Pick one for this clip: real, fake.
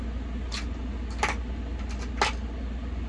real